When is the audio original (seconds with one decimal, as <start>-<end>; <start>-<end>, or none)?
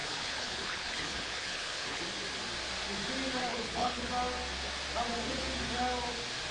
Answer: 2.0-3.5; 4.1-6.5